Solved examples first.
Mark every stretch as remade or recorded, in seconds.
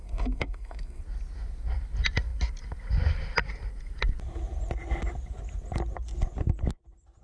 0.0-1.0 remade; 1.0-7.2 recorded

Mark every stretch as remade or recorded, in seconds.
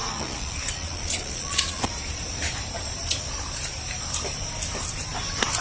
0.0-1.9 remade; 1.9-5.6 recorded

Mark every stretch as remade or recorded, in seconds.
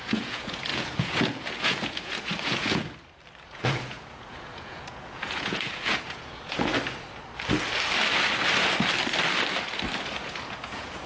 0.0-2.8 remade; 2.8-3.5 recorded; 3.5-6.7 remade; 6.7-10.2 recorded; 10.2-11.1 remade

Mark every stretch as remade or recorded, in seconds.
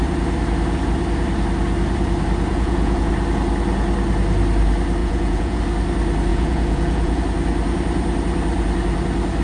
0.0-2.5 recorded; 2.5-3.1 remade; 3.1-5.0 recorded; 5.0-5.6 remade; 5.6-6.3 recorded; 6.3-7.2 remade; 7.2-9.4 recorded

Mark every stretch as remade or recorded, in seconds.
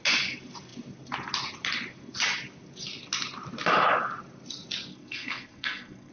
0.0-4.9 recorded; 4.9-6.1 remade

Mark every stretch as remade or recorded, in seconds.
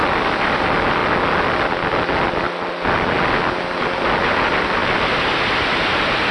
0.0-6.3 recorded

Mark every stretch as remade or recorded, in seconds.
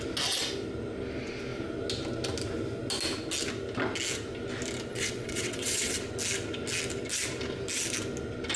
0.0-4.9 recorded; 4.9-6.0 remade; 6.0-8.6 recorded